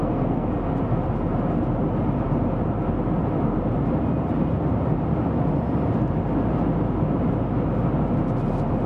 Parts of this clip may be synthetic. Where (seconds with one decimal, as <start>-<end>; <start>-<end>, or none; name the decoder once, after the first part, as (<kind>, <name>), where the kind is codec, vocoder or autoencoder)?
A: 0.0-0.5 (codec, SNAC)